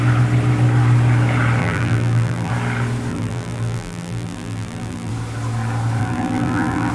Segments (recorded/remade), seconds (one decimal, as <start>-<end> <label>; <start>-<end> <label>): 0.0-1.6 recorded; 1.6-2.5 remade; 2.5-3.1 recorded; 3.1-5.1 remade; 5.1-6.0 recorded; 6.0-6.9 remade